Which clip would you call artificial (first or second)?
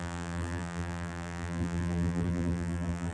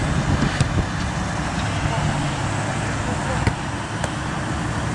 first